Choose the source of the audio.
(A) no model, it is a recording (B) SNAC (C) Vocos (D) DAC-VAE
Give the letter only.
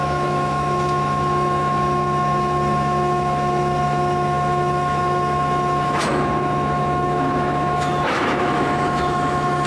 D